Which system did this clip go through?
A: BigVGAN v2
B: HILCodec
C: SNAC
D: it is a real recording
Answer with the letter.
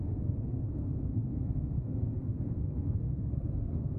C